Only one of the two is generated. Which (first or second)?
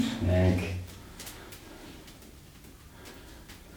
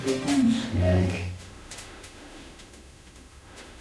second